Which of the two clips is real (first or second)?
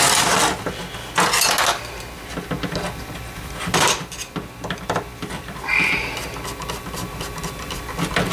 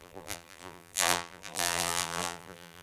first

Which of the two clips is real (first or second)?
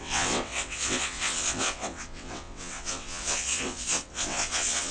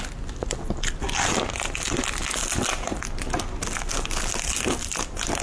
second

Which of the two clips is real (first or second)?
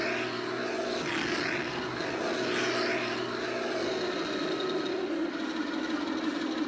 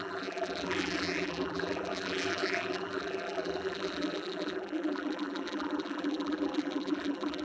first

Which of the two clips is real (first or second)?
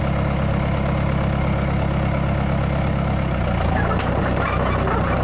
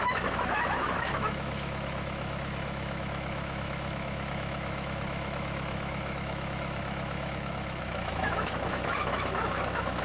first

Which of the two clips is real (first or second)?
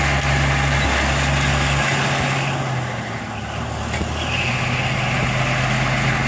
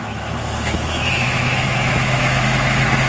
first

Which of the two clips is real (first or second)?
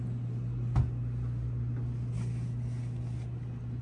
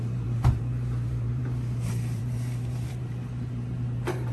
first